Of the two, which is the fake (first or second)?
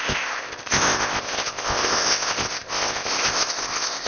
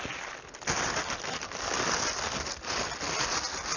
first